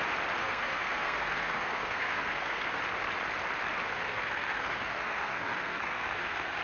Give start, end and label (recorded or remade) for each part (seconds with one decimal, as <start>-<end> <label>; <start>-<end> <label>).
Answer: 0.0-0.4 recorded; 0.4-2.8 remade; 2.8-3.8 recorded; 3.8-6.6 remade